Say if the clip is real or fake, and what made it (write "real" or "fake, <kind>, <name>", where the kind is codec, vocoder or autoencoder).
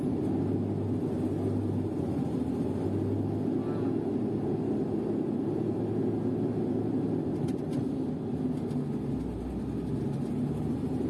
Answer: real